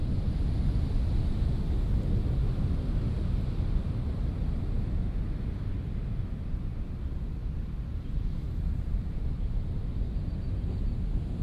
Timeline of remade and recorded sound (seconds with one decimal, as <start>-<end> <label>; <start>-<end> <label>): 0.0-11.4 recorded